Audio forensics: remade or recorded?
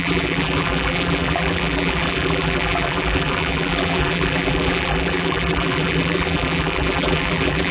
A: remade